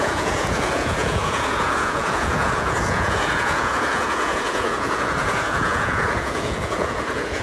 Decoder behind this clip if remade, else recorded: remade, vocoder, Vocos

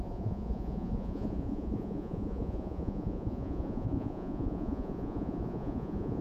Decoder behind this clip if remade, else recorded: remade, vocoder, Vocos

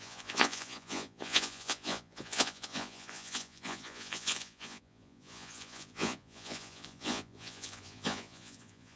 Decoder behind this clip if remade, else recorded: remade, vocoder, Vocos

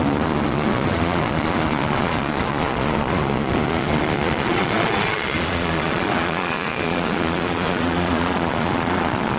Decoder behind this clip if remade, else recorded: remade, vocoder, Vocos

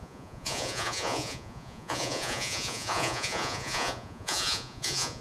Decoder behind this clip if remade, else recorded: remade, vocoder, Vocos